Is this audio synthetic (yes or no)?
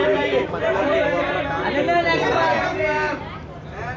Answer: no